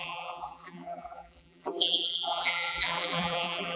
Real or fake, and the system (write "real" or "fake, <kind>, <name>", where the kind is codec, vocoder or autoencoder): fake, vocoder, BigVGAN v2